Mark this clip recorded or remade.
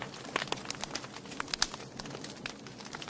recorded